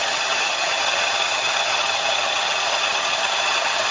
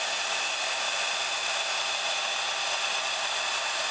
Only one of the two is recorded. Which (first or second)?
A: second